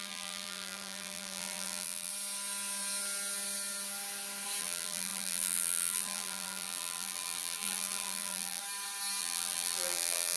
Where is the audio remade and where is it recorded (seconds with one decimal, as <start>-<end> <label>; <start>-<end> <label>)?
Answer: 0.0-2.1 remade; 2.1-4.6 recorded; 4.6-8.6 remade; 8.6-9.2 recorded; 9.2-10.4 remade